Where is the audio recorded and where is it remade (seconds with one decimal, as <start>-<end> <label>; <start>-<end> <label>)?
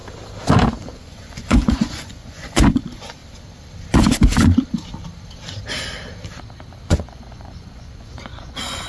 0.0-0.9 recorded; 0.9-3.2 remade; 3.2-6.9 recorded; 6.9-8.9 remade